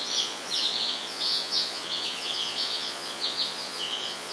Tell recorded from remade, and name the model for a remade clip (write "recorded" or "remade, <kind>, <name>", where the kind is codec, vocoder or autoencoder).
remade, vocoder, Vocos